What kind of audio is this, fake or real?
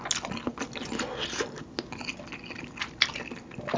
real